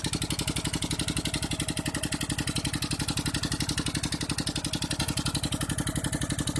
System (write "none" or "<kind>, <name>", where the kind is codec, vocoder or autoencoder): none